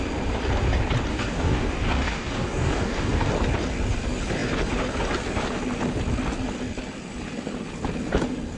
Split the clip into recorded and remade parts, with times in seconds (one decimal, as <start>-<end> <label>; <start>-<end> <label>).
0.0-1.1 recorded; 1.1-3.3 remade; 3.3-8.6 recorded